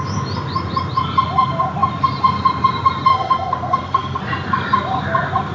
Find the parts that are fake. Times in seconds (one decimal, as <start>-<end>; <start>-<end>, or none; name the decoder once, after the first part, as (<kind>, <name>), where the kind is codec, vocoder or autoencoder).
3.1-4.2 (codec, SNAC)